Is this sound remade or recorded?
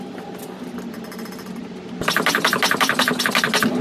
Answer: recorded